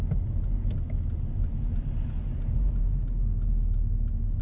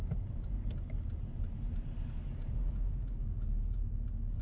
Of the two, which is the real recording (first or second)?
first